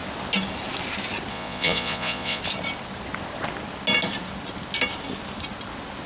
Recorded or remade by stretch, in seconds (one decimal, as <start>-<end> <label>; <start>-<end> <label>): 0.0-1.3 recorded; 1.3-2.4 remade; 2.4-6.1 recorded